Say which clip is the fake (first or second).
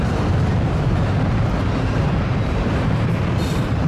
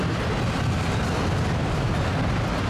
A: first